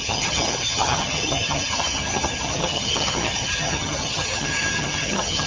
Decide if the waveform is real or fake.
fake